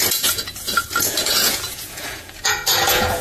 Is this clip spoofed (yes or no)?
yes